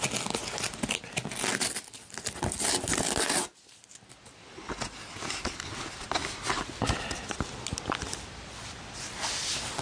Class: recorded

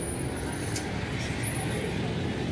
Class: recorded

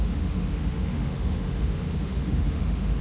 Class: remade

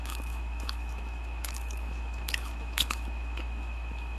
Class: remade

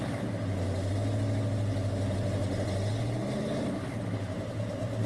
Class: recorded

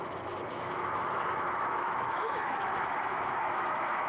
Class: remade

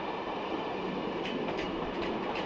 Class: recorded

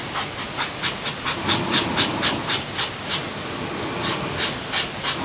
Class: recorded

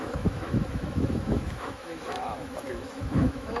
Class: remade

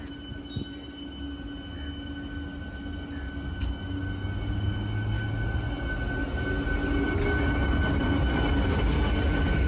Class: recorded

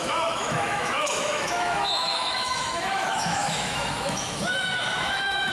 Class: remade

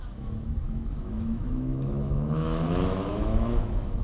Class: remade